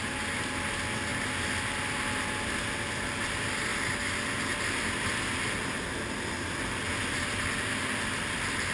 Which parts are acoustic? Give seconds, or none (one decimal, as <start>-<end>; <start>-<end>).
0.0-8.7